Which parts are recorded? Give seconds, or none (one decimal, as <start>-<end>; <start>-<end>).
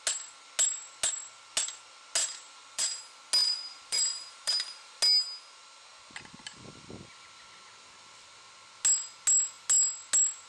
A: 0.0-2.2; 3.0-3.4; 5.0-10.5